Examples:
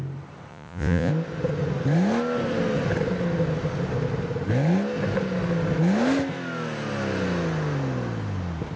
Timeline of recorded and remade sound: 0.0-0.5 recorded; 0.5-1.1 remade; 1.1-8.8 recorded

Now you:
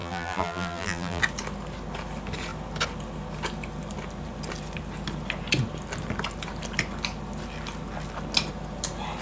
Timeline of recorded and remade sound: 0.0-1.2 remade; 1.2-9.2 recorded

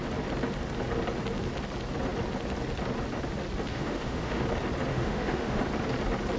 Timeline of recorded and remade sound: 0.0-3.7 recorded; 3.7-4.4 remade; 4.4-4.9 recorded; 4.9-5.6 remade; 5.6-6.4 recorded